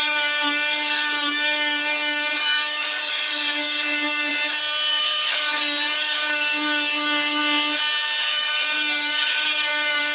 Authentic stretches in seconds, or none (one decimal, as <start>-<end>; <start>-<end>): 4.3-4.9; 7.4-8.2